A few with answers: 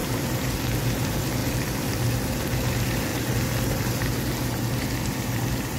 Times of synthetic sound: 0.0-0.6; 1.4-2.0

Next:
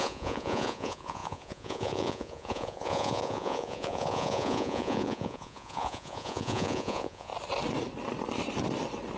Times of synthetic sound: 0.0-7.3